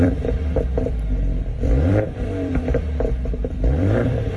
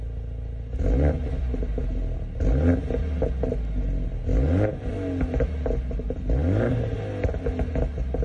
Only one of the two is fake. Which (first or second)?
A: first